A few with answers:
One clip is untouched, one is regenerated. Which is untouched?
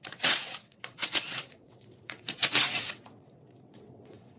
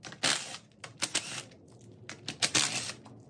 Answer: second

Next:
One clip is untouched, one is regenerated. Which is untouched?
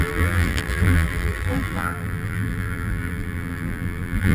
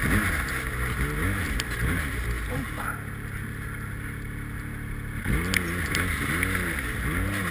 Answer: second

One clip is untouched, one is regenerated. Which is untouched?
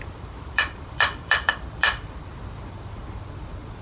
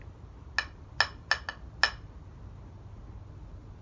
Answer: second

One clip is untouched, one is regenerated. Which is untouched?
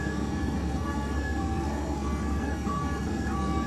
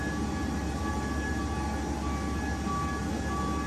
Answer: second